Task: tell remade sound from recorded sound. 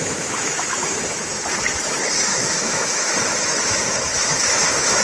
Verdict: remade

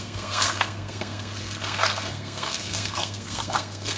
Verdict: remade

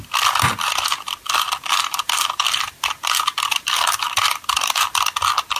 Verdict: recorded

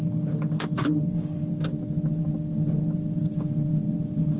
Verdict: recorded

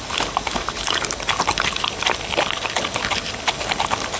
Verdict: recorded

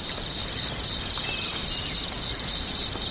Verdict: remade